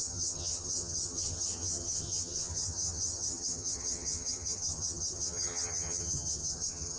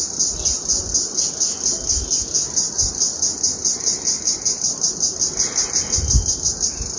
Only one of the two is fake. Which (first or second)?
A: first